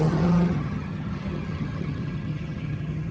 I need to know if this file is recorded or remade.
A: remade